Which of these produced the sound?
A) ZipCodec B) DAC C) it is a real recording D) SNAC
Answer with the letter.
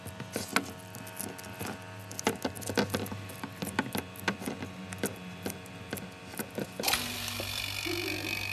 C